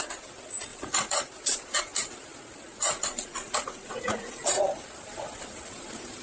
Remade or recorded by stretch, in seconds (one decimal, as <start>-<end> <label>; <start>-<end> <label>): 0.0-0.7 recorded; 0.7-1.2 remade; 1.2-2.7 recorded; 2.7-4.6 remade; 4.6-6.2 recorded